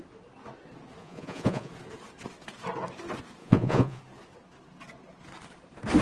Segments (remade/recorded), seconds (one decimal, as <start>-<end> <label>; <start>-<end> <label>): 0.0-1.0 recorded; 1.0-1.7 remade; 1.7-3.4 recorded; 3.4-4.0 remade; 4.0-6.0 recorded

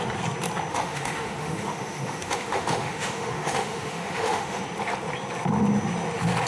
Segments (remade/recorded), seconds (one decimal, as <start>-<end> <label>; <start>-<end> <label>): 0.0-0.7 recorded; 0.7-4.6 remade; 4.6-6.5 recorded

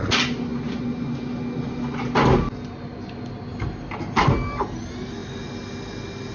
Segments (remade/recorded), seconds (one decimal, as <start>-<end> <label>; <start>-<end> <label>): 0.0-6.3 recorded